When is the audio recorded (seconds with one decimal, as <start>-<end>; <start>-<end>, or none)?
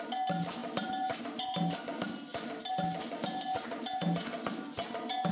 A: 0.0-5.3